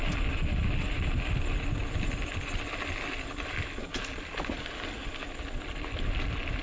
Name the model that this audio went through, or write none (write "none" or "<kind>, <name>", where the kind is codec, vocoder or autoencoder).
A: none